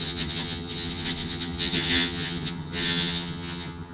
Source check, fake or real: fake